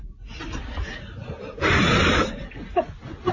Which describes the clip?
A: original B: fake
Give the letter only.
A